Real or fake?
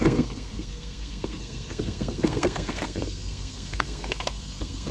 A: fake